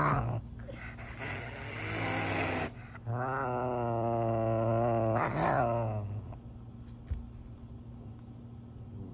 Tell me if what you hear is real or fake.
real